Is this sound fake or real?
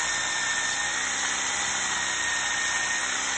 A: real